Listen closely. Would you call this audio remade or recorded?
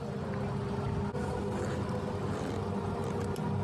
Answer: recorded